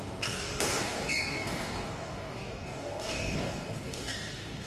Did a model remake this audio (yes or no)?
yes